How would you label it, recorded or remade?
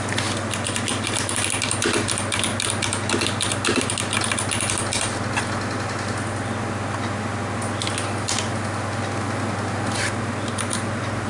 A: recorded